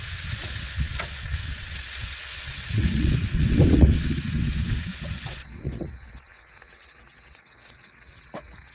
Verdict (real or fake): fake